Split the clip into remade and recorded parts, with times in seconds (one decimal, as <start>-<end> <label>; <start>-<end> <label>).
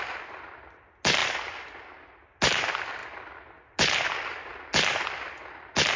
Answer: 0.0-6.0 recorded